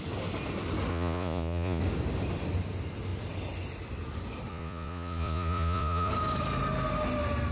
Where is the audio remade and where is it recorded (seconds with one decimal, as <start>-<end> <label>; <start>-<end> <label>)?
0.0-0.9 recorded; 0.9-1.8 remade; 1.8-4.5 recorded; 4.5-6.1 remade; 6.1-7.5 recorded